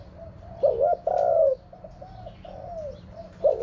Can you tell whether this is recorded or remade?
recorded